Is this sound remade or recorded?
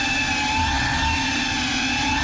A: recorded